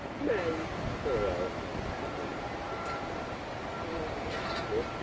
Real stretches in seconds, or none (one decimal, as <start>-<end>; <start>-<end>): 0.0-2.3; 4.5-5.0